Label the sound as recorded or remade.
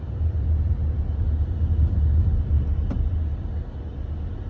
recorded